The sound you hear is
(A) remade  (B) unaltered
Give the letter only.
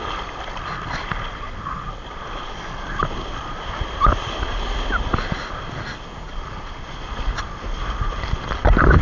B